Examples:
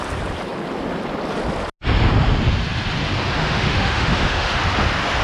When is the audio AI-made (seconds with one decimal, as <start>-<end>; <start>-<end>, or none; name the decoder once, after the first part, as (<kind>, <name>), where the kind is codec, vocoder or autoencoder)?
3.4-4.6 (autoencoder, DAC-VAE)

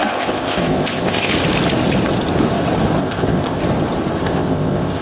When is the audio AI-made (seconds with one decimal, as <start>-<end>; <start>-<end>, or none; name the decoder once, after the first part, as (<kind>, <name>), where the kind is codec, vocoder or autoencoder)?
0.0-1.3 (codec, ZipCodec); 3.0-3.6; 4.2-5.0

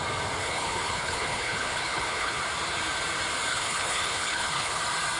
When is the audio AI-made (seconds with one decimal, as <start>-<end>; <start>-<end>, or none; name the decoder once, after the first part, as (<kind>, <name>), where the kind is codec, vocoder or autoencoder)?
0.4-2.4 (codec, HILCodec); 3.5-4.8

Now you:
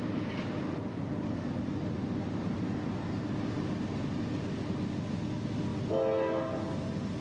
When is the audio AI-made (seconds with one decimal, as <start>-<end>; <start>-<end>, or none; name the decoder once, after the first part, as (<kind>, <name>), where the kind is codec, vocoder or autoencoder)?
none

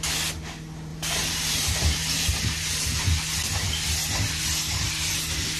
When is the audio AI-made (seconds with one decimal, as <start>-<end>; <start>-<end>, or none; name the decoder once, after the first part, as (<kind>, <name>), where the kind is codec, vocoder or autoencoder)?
0.9-2.3 (vocoder, BigVGAN v2)

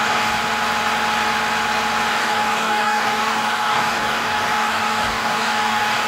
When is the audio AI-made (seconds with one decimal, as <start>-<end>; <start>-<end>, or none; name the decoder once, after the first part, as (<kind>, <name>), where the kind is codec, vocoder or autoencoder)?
0.0-0.4 (codec, DAC); 2.1-6.1

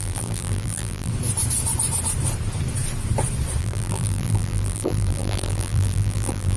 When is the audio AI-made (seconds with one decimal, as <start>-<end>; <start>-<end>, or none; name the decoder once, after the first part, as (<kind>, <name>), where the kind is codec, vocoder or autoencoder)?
0.0-1.1 (vocoder, BigVGAN v2); 3.6-6.6